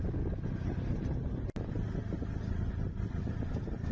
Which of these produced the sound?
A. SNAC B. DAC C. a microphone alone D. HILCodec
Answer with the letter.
C